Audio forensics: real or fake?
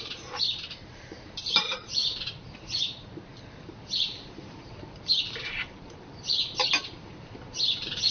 fake